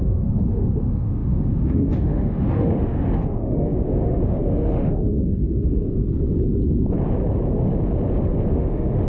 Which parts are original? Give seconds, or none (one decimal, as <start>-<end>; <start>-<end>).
6.0-8.5